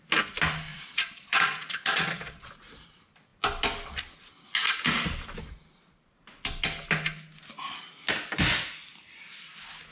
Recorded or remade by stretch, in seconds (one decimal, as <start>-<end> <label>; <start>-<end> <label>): 0.0-0.7 recorded; 0.7-2.5 remade; 2.5-9.9 recorded